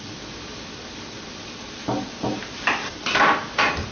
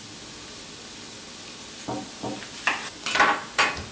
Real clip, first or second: second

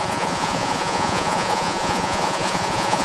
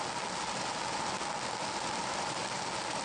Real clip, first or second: second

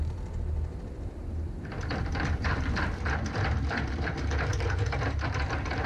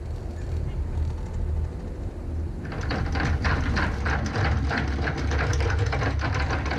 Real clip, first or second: second